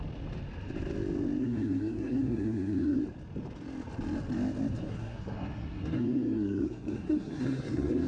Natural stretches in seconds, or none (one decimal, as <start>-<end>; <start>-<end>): 0.0-1.4; 3.0-4.9

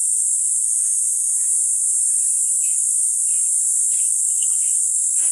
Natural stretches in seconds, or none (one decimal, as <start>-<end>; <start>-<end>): 1.3-2.6; 3.2-4.0